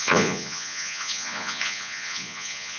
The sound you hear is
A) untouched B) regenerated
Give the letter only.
B